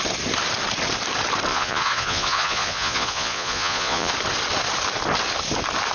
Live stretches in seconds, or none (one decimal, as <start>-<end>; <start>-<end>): 0.0-1.5; 4.1-5.9